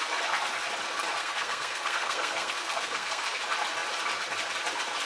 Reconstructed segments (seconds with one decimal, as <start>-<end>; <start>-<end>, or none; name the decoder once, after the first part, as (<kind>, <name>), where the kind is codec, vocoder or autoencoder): 1.2-3.4 (codec, SNAC)